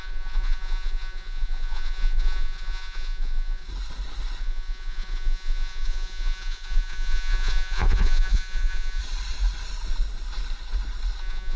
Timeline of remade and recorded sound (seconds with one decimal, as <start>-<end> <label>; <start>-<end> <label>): 0.0-3.7 remade; 3.7-4.4 recorded; 4.4-9.0 remade; 9.0-11.2 recorded; 11.2-11.6 remade